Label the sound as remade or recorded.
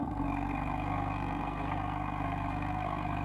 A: remade